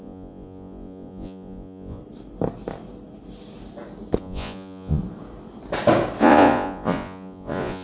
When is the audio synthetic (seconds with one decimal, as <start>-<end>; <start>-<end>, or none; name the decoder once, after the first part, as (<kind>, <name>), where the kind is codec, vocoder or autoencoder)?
0.0-2.0 (vocoder, Vocos); 4.2-5.0; 6.2-7.8